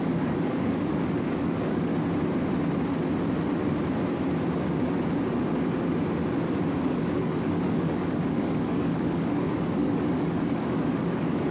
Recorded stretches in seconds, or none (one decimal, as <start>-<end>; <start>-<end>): 1.9-6.9